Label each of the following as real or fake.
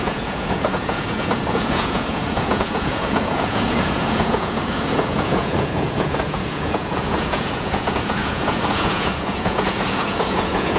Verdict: fake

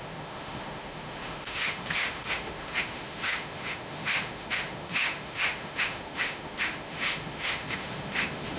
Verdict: fake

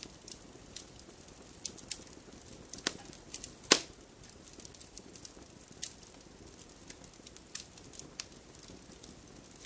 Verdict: real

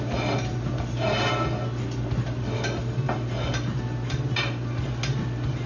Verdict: real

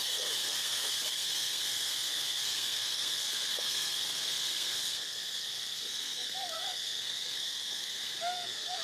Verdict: fake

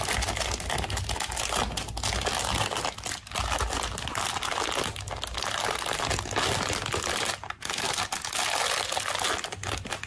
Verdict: real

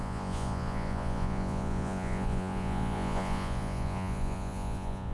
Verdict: fake